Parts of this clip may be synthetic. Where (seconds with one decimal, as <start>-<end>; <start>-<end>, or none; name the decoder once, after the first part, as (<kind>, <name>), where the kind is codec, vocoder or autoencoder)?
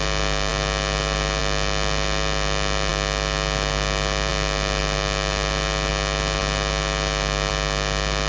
none